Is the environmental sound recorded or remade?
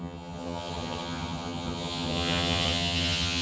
remade